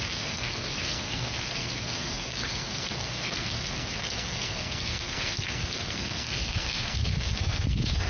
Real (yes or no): no